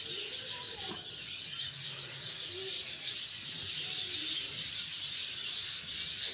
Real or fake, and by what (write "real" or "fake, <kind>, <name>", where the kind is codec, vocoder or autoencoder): real